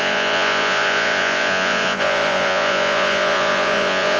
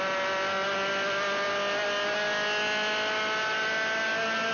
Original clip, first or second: second